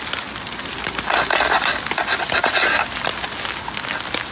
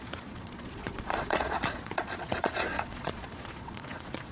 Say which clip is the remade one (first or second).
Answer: second